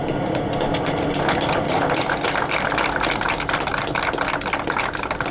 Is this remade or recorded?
recorded